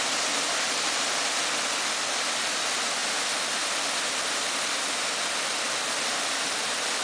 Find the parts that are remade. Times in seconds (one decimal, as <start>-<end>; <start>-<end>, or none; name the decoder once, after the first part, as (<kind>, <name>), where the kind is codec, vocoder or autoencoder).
none